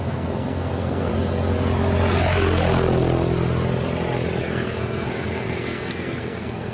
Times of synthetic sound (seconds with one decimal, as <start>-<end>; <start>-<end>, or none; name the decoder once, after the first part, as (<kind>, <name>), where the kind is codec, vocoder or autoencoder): 0.0-1.1 (codec, SNAC); 4.4-6.7